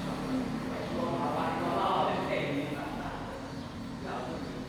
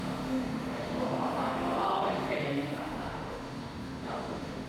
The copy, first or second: second